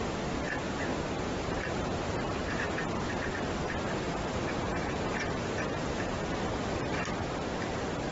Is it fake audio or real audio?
fake